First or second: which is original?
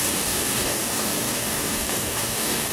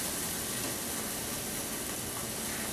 second